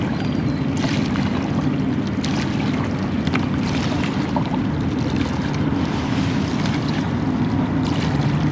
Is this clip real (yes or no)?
yes